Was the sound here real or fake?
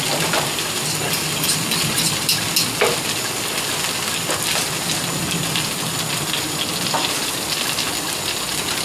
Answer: real